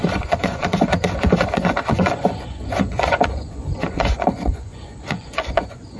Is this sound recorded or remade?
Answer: remade